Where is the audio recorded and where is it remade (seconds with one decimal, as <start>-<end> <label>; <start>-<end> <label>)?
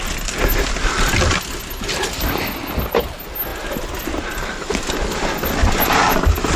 0.0-6.6 recorded